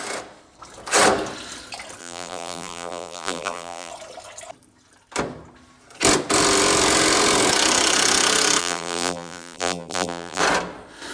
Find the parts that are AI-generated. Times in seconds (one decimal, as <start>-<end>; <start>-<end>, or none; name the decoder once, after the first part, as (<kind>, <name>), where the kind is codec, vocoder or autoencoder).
2.0-3.9 (vocoder, BigVGAN v2); 8.6-10.4